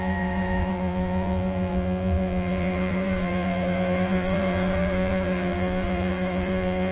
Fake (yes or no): yes